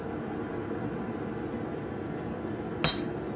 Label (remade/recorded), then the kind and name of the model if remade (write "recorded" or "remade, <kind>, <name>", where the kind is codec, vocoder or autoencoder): recorded